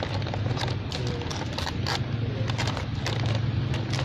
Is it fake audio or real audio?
real